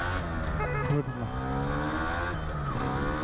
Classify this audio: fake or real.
real